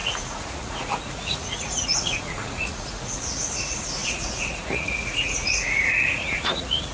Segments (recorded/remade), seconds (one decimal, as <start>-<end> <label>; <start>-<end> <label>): 0.0-6.9 remade